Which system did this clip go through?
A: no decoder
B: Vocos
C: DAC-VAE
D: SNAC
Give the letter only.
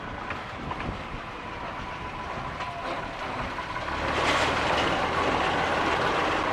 A